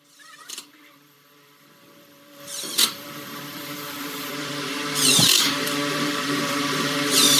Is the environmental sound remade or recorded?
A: remade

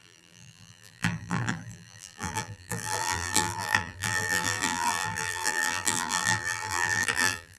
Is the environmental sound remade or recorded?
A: remade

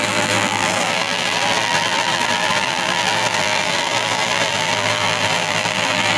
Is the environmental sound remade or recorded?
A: remade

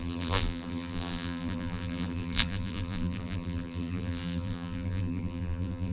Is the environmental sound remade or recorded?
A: remade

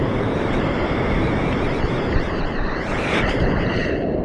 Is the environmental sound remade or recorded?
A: remade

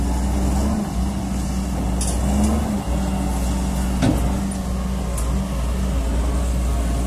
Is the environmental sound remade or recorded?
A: recorded